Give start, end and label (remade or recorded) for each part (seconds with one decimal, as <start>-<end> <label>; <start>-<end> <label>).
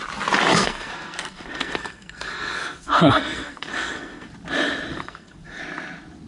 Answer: 0.0-0.5 recorded; 0.5-4.3 remade; 4.3-4.9 recorded; 4.9-5.6 remade; 5.6-6.3 recorded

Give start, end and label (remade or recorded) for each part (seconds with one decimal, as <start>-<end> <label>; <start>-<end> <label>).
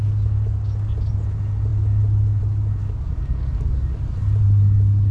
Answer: 0.0-2.8 recorded; 2.8-4.0 remade; 4.0-5.1 recorded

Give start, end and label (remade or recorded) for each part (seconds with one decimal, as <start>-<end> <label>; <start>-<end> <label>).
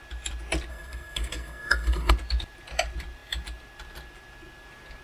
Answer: 0.0-0.7 recorded; 0.7-2.1 remade; 2.1-5.0 recorded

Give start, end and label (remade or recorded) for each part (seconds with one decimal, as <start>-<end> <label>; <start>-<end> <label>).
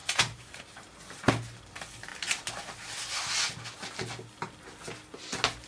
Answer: 0.0-0.6 remade; 0.6-5.7 recorded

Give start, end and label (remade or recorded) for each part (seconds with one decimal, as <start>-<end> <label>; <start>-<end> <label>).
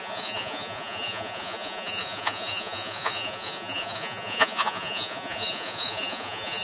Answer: 0.0-6.6 remade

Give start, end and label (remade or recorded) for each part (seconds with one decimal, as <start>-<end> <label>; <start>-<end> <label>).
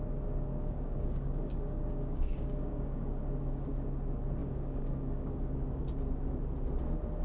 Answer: 0.0-0.5 recorded; 0.5-3.2 remade; 3.2-4.4 recorded; 4.4-5.9 remade; 5.9-7.2 recorded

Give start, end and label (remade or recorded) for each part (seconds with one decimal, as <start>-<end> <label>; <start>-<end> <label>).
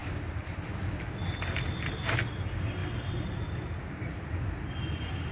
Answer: 0.0-5.3 recorded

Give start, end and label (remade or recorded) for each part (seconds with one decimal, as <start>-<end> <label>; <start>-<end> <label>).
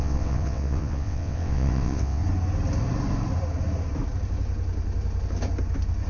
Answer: 0.0-2.2 remade; 2.2-6.1 recorded